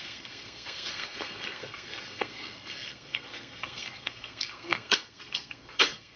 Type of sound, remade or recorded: remade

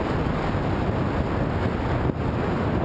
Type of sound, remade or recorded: recorded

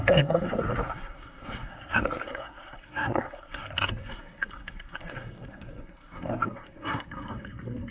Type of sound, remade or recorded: remade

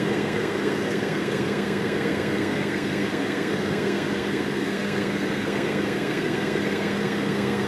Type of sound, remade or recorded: remade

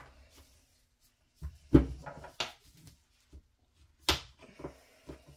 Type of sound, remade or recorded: recorded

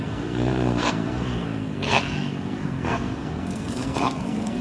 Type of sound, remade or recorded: remade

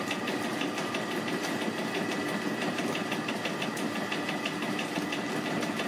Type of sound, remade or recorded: recorded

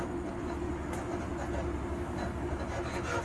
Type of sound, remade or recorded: recorded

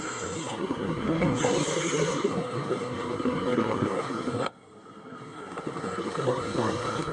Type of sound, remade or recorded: remade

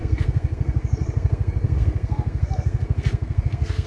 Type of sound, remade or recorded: remade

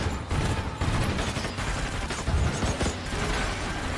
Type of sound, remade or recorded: recorded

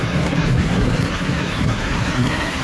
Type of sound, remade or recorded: remade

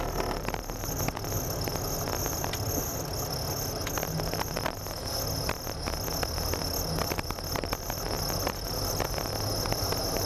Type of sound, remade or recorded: recorded